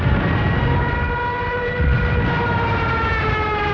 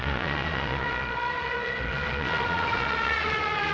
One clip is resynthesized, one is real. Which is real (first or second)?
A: first